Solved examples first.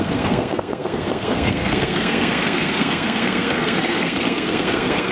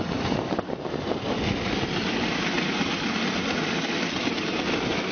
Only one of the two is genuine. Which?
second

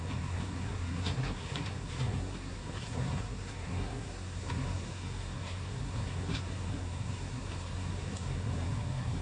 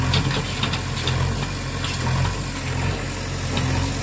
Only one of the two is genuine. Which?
second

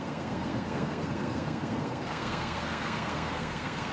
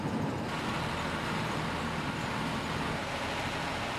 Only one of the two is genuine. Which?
second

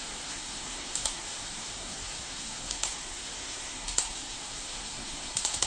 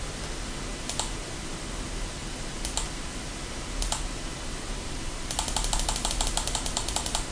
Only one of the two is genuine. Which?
second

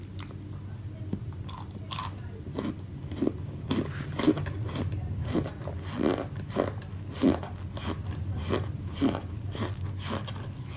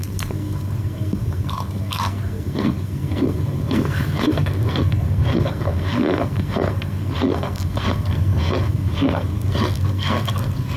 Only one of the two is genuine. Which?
first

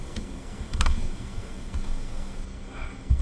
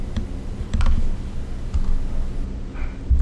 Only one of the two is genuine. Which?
second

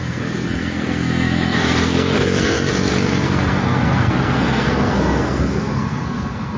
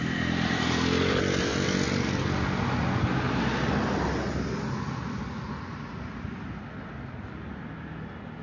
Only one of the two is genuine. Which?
second